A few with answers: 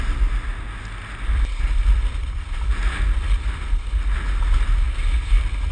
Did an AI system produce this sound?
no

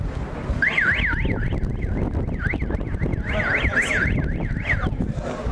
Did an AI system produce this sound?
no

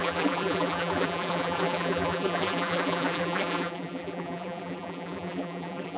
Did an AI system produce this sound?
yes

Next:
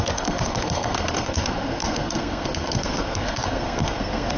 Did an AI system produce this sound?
yes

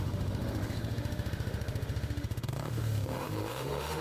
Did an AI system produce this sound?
yes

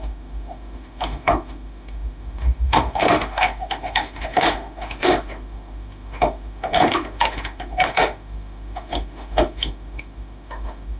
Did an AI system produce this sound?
yes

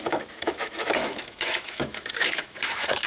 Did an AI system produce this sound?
yes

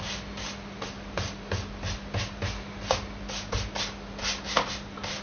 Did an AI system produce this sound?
no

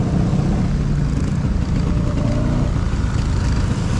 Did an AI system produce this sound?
no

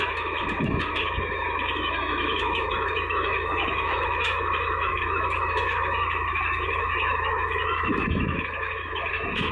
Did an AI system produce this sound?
yes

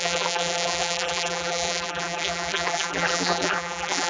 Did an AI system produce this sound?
yes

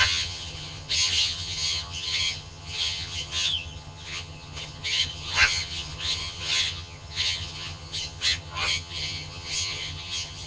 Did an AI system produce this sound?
yes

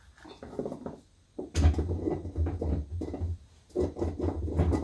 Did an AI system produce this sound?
no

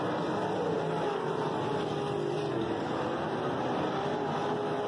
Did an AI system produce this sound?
no